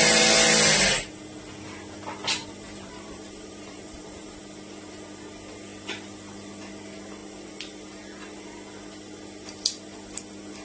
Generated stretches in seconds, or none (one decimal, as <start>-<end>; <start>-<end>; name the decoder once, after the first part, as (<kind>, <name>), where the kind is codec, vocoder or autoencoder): 2.4-4.4 (vocoder, BigVGAN v2)